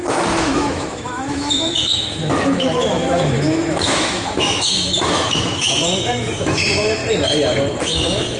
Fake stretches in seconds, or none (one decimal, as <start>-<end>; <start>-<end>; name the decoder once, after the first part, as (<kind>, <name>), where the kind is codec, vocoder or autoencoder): 0.0-7.0 (autoencoder, DAC-VAE); 7.8-8.4